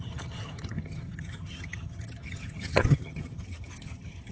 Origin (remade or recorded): remade